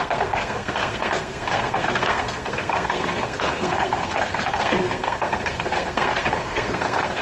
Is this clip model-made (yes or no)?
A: yes